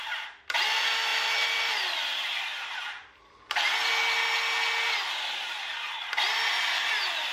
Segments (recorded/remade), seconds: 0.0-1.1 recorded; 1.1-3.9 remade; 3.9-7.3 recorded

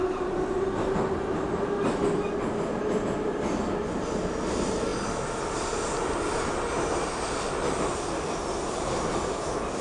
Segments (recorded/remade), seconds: 0.0-9.8 recorded

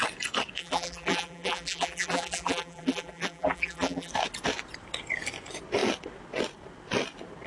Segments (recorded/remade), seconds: 0.0-0.6 recorded; 0.6-4.1 remade; 4.1-7.5 recorded

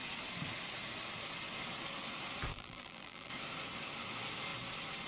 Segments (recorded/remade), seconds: 0.0-2.5 recorded; 2.5-3.3 remade; 3.3-5.1 recorded

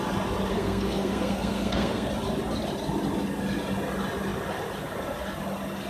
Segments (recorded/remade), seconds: 0.0-0.5 recorded; 0.5-2.1 remade; 2.1-5.9 recorded